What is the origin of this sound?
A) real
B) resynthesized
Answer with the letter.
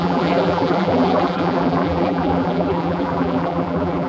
B